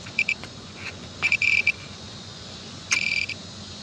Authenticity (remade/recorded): remade